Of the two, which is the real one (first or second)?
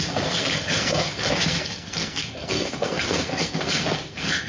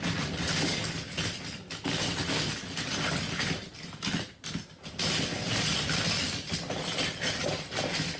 second